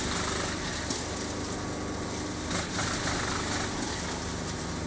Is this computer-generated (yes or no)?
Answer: no